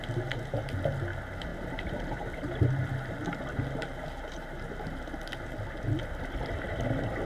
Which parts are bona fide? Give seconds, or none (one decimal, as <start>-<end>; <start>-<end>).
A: 0.0-1.5; 3.4-3.9; 5.0-7.2